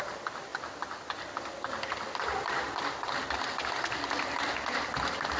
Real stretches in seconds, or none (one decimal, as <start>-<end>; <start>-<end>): 0.0-5.4